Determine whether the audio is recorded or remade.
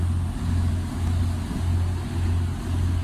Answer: recorded